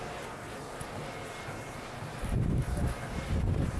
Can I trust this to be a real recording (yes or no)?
yes